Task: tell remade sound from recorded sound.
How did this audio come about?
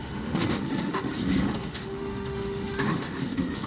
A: remade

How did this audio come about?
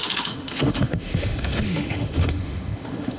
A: remade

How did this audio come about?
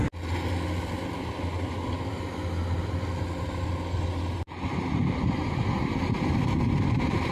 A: recorded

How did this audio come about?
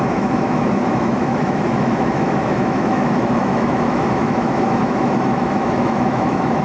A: remade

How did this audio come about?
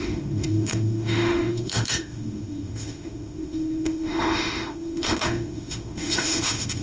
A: remade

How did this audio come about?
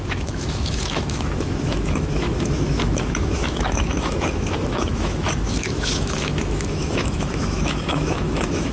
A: remade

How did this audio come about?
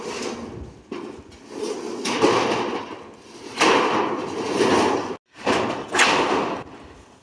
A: recorded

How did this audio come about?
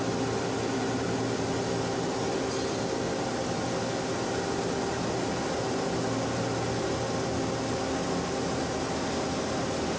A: recorded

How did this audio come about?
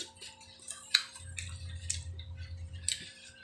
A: recorded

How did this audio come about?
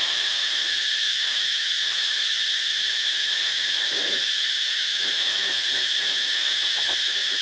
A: remade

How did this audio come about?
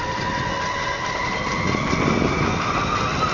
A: recorded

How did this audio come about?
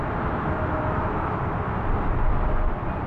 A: recorded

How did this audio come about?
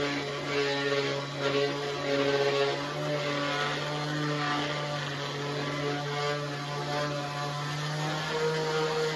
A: recorded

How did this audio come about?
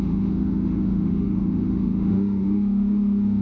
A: remade